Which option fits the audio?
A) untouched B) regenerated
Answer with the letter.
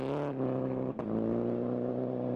A